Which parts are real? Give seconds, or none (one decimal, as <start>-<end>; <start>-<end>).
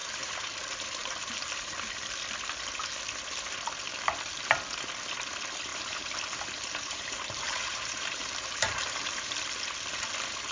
0.6-1.0; 1.7-5.7; 9.3-10.5